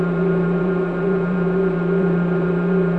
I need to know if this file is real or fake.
fake